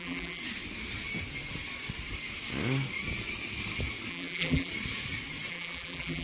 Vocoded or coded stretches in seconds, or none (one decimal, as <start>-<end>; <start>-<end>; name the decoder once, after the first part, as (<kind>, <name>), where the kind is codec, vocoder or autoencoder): 0.0-0.4 (vocoder, BigVGAN v2); 4.1-4.7; 5.5-6.2